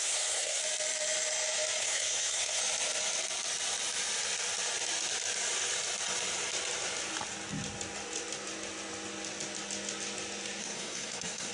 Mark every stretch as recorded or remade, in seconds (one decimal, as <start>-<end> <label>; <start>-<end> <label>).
0.0-0.6 remade; 0.6-1.8 recorded; 1.8-2.6 remade; 2.6-10.6 recorded; 10.6-11.5 remade